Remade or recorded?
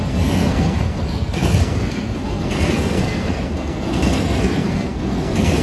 remade